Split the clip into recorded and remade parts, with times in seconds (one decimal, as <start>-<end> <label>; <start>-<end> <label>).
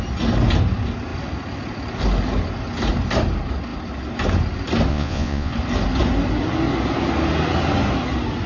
0.0-4.9 recorded; 4.9-5.5 remade; 5.5-8.5 recorded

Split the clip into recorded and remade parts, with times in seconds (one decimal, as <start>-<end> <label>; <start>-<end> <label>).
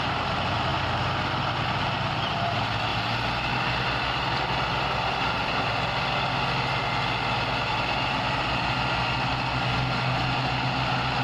0.0-11.2 recorded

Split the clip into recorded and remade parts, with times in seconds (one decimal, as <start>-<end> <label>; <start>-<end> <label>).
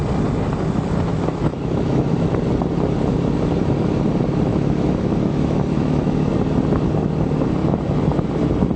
0.0-1.1 recorded; 1.1-2.3 remade; 2.3-4.5 recorded; 4.5-6.3 remade; 6.3-8.8 recorded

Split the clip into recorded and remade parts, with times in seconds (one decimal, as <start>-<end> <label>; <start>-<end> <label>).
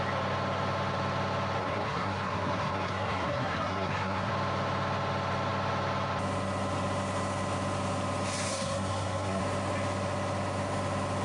0.0-1.6 recorded; 1.6-4.3 remade; 4.3-8.5 recorded; 8.5-9.4 remade; 9.4-11.2 recorded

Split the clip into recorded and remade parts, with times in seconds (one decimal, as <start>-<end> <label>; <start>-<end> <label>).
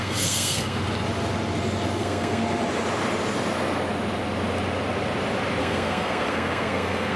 0.0-0.8 remade; 0.8-2.0 recorded; 2.0-2.4 remade; 2.4-5.6 recorded; 5.6-7.2 remade